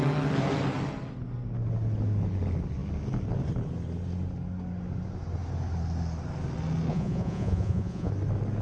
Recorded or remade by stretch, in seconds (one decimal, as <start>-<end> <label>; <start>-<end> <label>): 0.0-6.9 recorded; 6.9-8.1 remade; 8.1-8.6 recorded